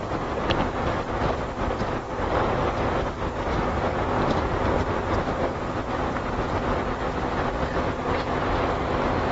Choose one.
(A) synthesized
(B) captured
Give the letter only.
B